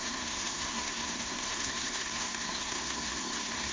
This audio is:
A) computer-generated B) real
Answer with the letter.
A